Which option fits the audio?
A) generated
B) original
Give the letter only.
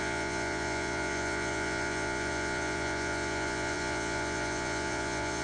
A